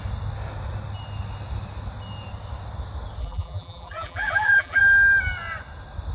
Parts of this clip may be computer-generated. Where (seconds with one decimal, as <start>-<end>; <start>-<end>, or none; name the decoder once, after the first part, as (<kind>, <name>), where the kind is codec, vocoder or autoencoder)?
3.2-4.8 (vocoder, BigVGAN v2)

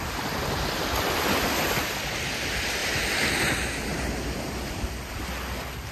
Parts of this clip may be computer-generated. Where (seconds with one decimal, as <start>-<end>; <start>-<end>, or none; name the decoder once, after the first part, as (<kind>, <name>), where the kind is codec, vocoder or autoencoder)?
2.8-4.9 (vocoder, BigVGAN v2)